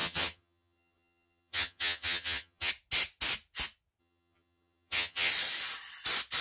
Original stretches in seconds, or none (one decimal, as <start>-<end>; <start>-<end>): 2.7-4.0; 5.3-6.4